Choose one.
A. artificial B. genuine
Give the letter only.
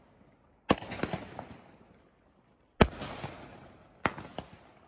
B